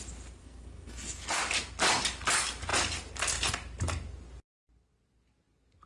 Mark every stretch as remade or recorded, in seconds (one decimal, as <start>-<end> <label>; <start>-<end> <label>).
0.0-0.4 recorded; 0.4-1.4 remade; 1.4-5.9 recorded